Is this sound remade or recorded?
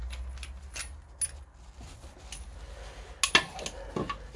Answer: recorded